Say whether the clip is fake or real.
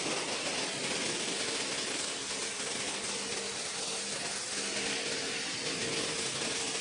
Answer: real